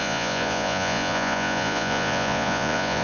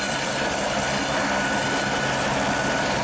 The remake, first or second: first